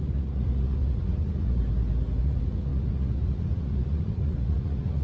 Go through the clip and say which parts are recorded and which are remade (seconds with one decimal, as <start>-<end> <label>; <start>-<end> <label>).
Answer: 0.0-1.6 remade; 1.6-2.2 recorded; 2.2-5.0 remade